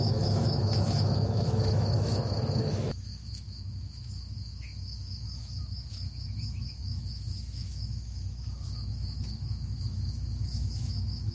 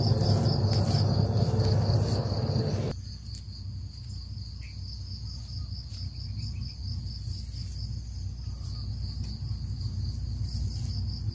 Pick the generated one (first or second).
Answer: first